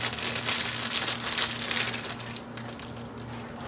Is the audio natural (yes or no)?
yes